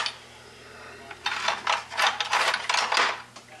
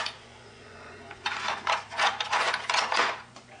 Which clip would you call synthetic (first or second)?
second